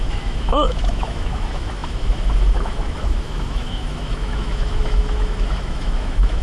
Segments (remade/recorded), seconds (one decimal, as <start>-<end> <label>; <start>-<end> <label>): 0.0-6.4 remade